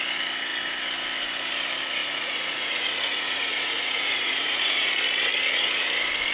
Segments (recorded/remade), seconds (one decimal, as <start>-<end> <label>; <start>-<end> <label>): 0.0-2.0 recorded; 2.0-4.9 remade; 4.9-6.3 recorded